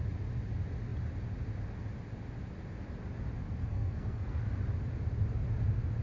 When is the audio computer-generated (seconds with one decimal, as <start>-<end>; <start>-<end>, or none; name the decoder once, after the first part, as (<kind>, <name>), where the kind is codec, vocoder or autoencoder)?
3.6-4.4 (codec, SNAC)